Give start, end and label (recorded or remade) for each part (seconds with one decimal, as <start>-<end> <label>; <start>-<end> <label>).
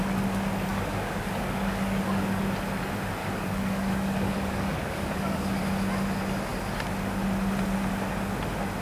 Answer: 0.0-0.7 recorded; 0.7-2.4 remade; 2.4-3.2 recorded; 3.2-5.6 remade; 5.6-8.8 recorded